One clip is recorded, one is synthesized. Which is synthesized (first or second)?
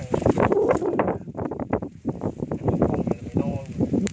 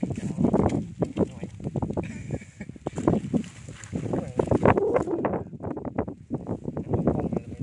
first